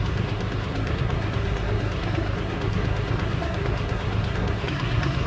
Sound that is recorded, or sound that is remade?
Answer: remade